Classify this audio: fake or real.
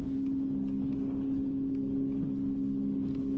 real